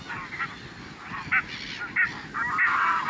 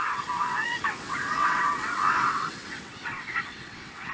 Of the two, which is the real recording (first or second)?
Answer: first